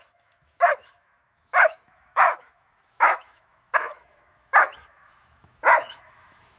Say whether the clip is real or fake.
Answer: fake